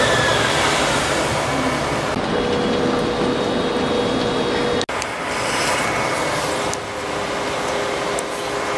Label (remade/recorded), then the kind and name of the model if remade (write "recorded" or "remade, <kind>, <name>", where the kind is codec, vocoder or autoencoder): recorded